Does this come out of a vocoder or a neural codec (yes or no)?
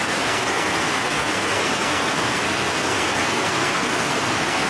yes